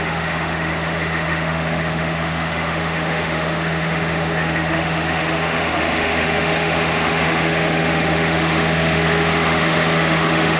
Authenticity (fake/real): fake